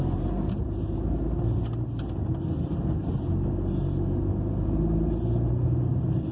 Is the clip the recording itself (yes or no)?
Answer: yes